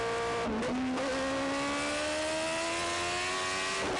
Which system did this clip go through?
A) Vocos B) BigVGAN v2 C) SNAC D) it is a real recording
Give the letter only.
D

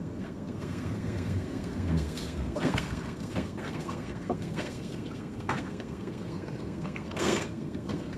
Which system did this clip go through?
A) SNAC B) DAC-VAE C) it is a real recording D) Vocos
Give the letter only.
A